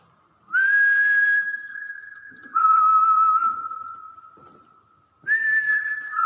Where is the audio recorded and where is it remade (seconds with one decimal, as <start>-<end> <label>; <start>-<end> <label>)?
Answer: 0.0-1.7 recorded; 1.7-2.8 remade; 2.8-5.7 recorded; 5.7-6.3 remade